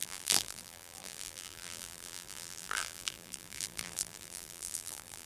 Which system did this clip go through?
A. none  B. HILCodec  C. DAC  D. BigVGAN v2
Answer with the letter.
D